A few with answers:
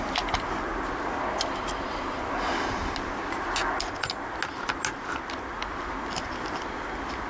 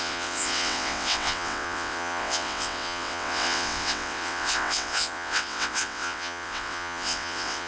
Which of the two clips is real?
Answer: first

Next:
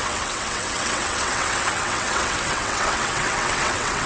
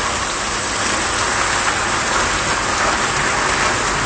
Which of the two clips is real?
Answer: second